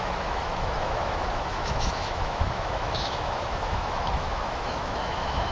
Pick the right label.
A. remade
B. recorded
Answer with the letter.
A